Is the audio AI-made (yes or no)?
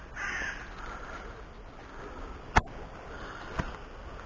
no